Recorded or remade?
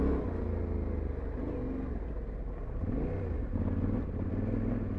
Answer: recorded